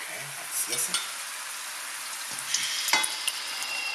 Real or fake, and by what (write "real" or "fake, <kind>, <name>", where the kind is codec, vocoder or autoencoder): real